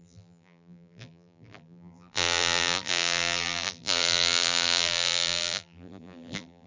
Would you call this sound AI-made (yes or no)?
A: yes